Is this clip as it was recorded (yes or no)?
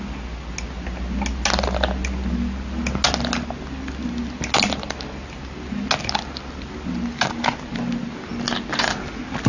yes